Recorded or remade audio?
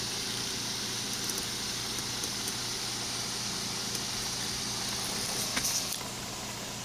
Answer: recorded